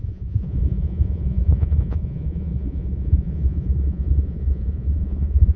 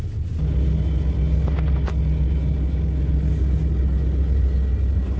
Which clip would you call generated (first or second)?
first